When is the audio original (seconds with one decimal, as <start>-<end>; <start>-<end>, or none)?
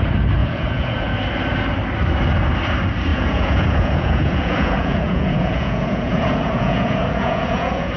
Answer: 0.0-0.4; 1.1-3.1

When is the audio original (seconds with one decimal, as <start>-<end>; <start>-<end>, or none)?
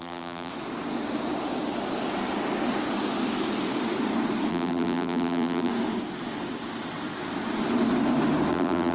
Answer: 0.5-4.5; 5.7-8.5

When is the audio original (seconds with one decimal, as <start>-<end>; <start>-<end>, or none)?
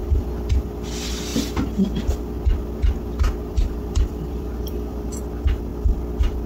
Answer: 0.6-3.5; 5.2-6.5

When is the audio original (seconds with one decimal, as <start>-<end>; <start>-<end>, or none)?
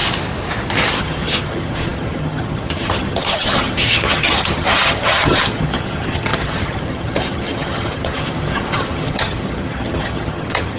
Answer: 0.0-1.0